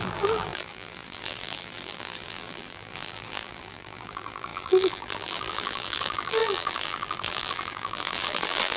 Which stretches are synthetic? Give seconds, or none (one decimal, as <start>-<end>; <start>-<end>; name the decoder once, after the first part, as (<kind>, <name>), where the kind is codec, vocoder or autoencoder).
0.0-8.8 (vocoder, BigVGAN v2)